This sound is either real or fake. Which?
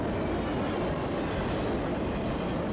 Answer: real